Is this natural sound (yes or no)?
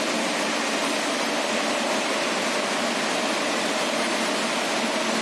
yes